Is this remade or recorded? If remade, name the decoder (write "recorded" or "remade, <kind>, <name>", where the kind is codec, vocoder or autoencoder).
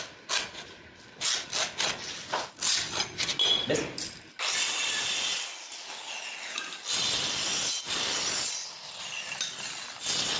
recorded